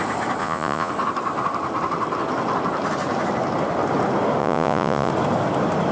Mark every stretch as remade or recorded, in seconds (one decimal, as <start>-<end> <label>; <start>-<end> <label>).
0.0-0.4 recorded; 0.4-0.9 remade; 0.9-4.4 recorded; 4.4-5.1 remade; 5.1-5.9 recorded